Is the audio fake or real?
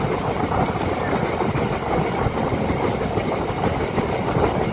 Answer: real